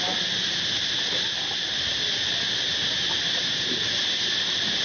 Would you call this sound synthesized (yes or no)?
no